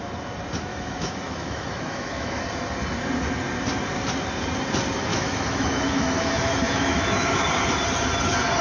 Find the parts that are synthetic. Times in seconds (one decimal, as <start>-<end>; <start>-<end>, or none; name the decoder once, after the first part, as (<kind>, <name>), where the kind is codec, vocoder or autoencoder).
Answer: 0.7-2.4 (autoencoder, DAC-VAE); 5.1-7.4